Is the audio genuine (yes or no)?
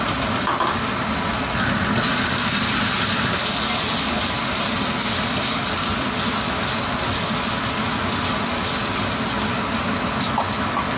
yes